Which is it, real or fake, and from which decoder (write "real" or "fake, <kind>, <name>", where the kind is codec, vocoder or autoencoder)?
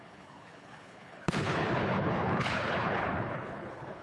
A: fake, codec, HILCodec